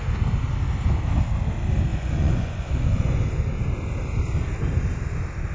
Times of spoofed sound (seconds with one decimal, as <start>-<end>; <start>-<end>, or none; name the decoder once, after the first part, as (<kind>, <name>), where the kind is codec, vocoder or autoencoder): 1.9-3.2 (vocoder, Vocos)